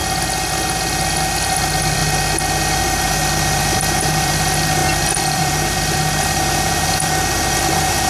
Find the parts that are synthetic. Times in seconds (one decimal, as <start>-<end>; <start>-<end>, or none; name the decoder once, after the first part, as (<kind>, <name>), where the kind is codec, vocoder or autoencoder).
1.2-2.0 (vocoder, BigVGAN v2); 2.8-8.1